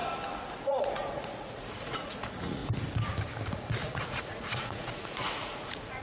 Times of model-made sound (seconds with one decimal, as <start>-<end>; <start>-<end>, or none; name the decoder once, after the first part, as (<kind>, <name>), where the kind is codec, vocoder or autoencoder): 0.6-2.6 (vocoder, Vocos); 3.5-6.0